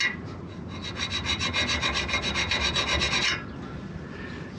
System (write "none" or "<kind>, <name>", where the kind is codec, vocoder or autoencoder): none